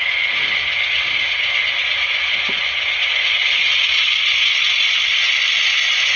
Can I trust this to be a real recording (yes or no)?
yes